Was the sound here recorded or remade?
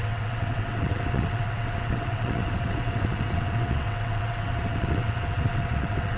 remade